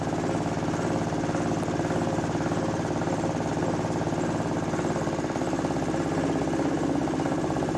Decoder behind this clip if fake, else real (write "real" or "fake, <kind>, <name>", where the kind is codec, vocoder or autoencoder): real